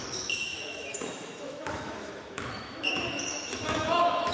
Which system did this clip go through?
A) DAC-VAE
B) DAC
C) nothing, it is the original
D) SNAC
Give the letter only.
A